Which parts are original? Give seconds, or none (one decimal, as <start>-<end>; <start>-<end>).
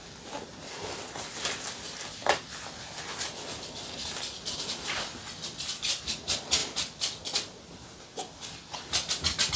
0.0-9.6